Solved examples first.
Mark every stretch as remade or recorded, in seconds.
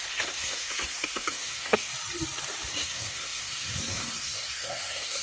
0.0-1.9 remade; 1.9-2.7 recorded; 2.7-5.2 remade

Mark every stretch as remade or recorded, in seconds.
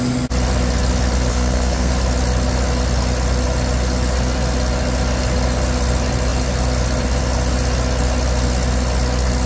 0.0-1.3 recorded; 1.3-1.9 remade; 1.9-9.5 recorded